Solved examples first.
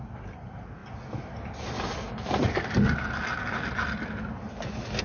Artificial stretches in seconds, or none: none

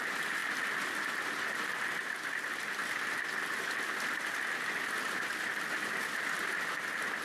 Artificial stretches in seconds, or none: none